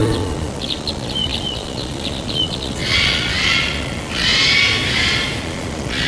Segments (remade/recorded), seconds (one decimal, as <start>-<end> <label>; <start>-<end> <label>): 0.0-4.3 remade; 4.3-5.4 recorded; 5.4-6.1 remade